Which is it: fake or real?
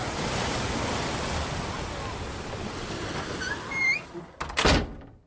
real